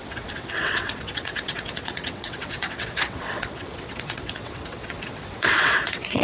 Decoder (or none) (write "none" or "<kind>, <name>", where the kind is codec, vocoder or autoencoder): vocoder, WaveNeXt